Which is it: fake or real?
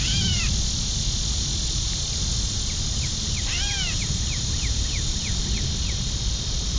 real